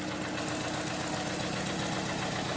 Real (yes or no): yes